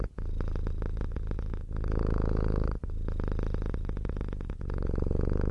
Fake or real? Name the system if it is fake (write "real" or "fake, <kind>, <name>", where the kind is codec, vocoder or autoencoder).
real